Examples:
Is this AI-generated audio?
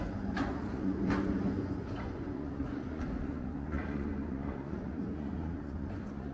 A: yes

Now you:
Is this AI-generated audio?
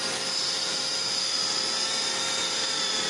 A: no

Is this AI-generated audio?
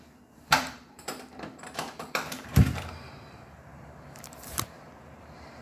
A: yes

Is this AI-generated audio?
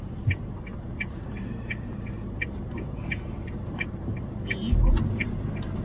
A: yes